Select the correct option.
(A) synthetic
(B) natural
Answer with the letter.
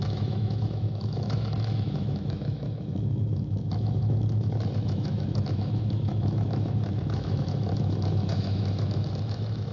A